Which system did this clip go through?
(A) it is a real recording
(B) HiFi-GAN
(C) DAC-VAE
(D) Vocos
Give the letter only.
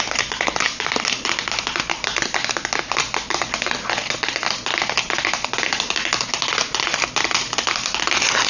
A